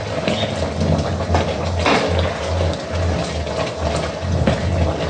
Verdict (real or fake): real